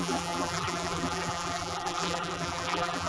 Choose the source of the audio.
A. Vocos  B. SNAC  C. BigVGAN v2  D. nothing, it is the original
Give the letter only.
C